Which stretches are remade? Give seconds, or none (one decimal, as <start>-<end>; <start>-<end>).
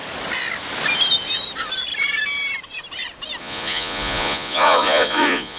3.4-5.6